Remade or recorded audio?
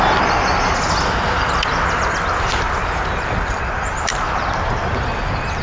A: recorded